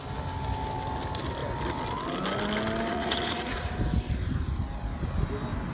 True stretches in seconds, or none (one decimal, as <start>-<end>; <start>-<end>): 0.0-2.9; 3.7-5.7